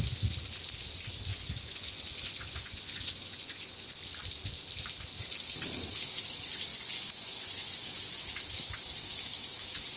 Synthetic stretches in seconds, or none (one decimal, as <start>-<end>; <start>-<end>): 1.3-3.9; 6.7-8.2